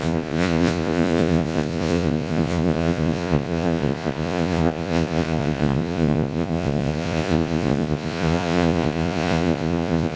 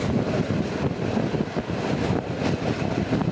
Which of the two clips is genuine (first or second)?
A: second